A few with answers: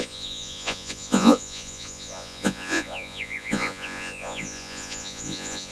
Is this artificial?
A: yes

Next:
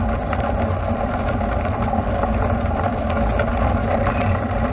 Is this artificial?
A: no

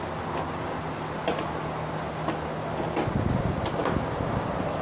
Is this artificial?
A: no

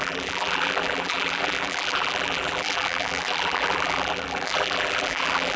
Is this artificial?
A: yes